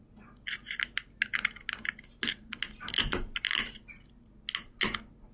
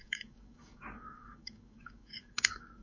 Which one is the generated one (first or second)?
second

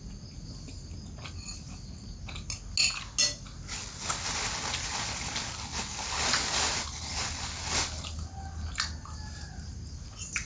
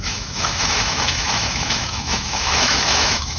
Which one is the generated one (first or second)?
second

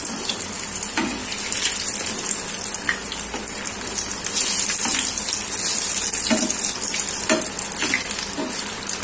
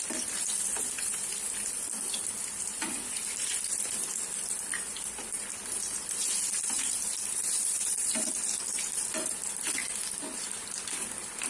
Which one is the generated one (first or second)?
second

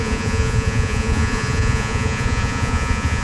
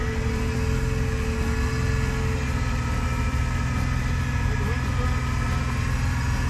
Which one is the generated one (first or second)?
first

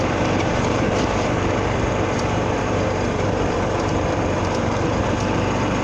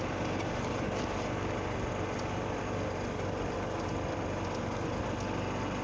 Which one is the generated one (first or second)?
first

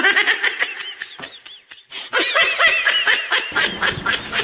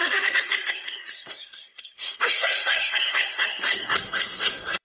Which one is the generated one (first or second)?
second